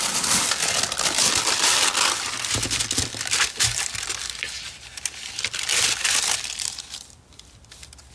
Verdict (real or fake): fake